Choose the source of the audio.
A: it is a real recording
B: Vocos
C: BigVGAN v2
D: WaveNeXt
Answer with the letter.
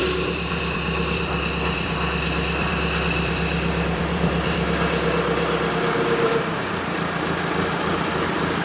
C